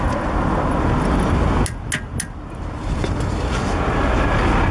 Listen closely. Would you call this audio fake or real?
real